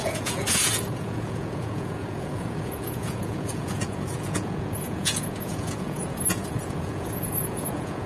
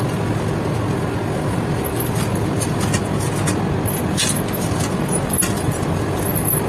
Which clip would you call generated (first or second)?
first